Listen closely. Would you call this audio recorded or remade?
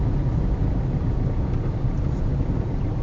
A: recorded